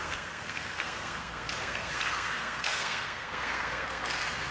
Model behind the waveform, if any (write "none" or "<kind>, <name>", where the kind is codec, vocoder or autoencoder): codec, SNAC